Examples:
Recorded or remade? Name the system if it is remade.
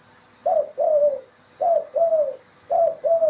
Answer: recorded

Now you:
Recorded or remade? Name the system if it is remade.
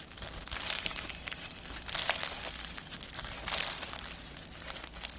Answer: recorded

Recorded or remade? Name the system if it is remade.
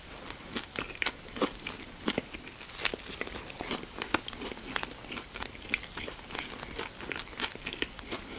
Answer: recorded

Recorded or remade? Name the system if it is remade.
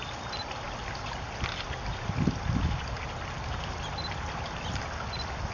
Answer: recorded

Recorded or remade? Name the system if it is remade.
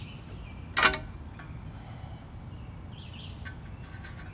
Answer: recorded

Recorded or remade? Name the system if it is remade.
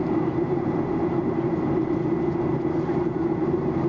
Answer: remade, vocoder, BigVGAN v2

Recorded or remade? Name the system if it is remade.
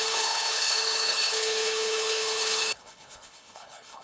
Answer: remade, codec, HILCodec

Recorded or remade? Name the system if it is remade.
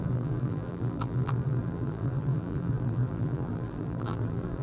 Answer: remade, vocoder, BigVGAN v2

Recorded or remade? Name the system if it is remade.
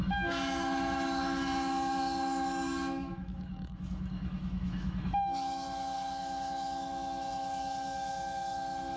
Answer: remade, autoencoder, DAC-VAE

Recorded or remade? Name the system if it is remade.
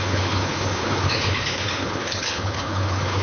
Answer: remade, codec, HILCodec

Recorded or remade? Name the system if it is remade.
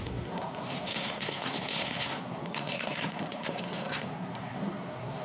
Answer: remade, codec, SNAC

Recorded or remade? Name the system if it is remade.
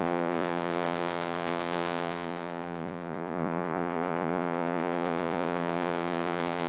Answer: remade, vocoder, Vocos